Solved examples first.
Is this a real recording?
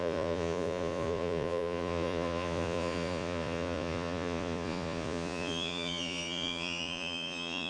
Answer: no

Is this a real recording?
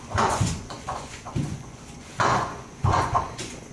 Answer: no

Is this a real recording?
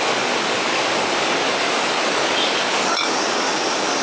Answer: no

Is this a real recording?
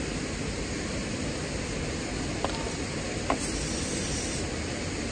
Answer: yes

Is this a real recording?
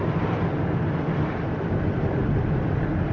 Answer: yes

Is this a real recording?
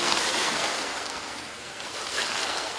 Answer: no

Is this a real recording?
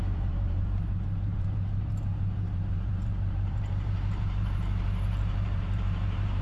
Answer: no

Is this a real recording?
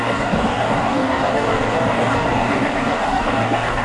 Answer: no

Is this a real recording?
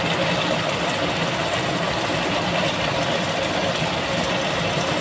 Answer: yes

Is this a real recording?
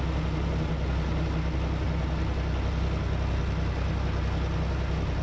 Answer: yes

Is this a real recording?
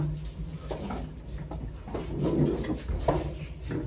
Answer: yes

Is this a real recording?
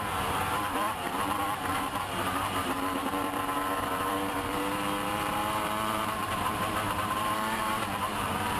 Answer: no